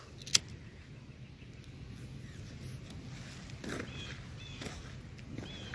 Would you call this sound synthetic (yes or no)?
no